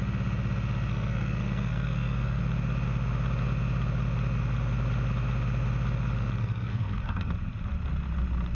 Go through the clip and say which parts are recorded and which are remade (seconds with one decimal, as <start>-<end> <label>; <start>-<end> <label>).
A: 0.0-0.9 recorded; 0.9-2.4 remade; 2.4-6.4 recorded; 6.4-7.3 remade; 7.3-8.5 recorded